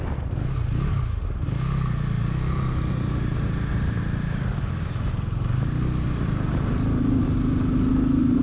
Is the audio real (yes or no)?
yes